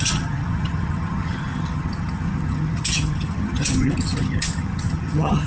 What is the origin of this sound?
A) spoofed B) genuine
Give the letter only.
A